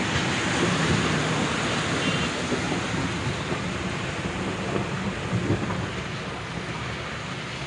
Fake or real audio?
real